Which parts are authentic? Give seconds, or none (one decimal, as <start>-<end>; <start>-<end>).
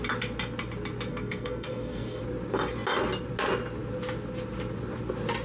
0.0-1.1; 2.2-5.4